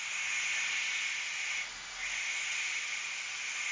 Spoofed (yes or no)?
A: no